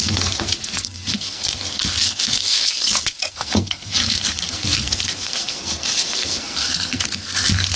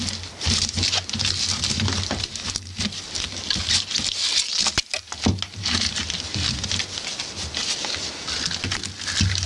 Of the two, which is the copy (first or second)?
first